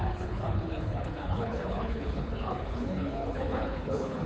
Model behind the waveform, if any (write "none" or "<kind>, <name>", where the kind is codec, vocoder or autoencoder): codec, HILCodec